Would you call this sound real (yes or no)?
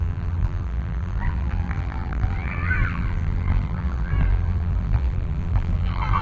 no